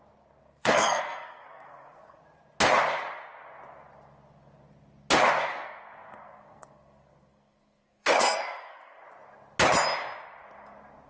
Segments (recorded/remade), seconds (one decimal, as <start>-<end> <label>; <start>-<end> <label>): 0.0-0.4 recorded; 0.4-2.2 remade; 2.2-5.5 recorded; 5.5-9.0 remade; 9.0-11.1 recorded